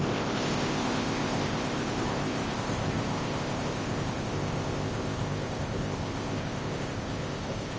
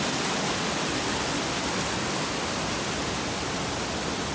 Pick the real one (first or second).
second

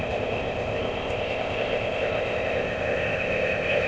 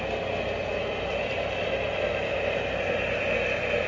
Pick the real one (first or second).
second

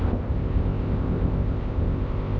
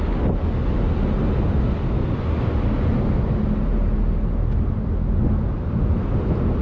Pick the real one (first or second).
second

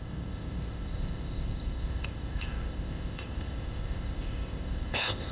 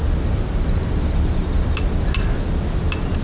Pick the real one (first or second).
second